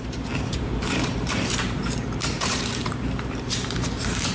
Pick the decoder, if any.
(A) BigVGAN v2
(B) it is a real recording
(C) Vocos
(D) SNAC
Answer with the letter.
A